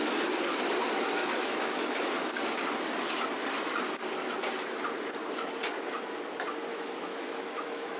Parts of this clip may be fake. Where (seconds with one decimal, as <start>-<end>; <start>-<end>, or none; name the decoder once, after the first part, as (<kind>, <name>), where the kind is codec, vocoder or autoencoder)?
1.2-2.3 (autoencoder, DAC-VAE); 6.7-8.0

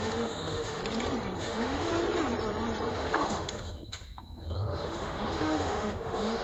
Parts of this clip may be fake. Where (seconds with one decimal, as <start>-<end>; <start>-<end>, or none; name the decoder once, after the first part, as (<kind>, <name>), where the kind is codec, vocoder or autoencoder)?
0.0-0.8 (autoencoder, DAC-VAE); 1.4-1.9; 2.9-6.4

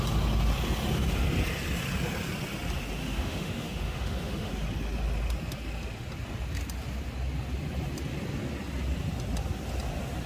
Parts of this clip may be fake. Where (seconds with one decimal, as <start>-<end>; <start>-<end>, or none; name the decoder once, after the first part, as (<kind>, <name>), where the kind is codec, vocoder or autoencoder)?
3.0-4.5 (autoencoder, DAC-VAE)

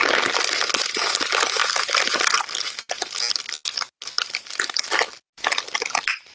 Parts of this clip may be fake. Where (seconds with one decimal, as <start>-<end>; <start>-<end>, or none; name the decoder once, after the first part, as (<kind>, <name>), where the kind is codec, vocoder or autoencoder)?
none

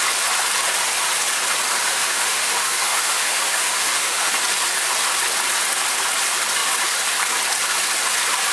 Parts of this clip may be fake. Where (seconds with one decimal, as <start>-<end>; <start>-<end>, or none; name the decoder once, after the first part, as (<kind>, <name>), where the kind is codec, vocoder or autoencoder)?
1.8-4.3 (autoencoder, DAC-VAE)